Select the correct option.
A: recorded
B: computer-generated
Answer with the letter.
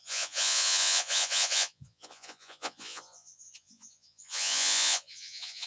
B